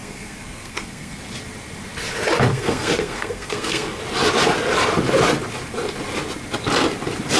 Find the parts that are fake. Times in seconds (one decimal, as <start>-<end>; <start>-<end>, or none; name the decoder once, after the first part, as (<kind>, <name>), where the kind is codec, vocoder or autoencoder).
0.0-1.2 (codec, SNAC); 2.5-4.0